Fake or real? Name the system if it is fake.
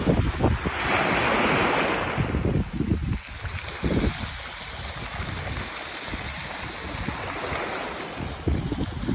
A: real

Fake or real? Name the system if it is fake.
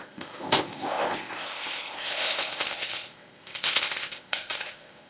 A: fake, codec, ZipCodec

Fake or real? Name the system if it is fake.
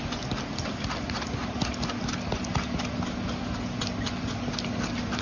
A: real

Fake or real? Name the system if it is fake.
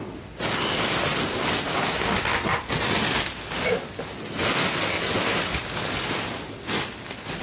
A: real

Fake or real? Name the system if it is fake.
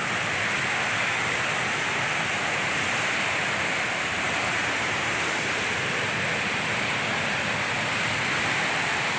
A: real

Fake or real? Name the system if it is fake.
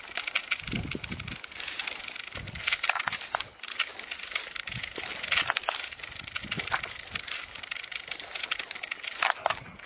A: real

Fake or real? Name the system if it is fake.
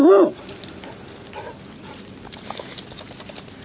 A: real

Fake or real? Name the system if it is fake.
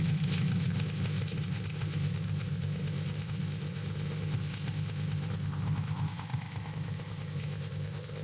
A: fake, codec, ZipCodec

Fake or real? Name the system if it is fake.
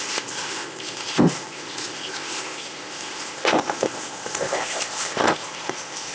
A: fake, codec, ZipCodec